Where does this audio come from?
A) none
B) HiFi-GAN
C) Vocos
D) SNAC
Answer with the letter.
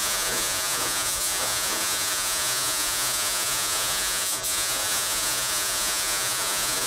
C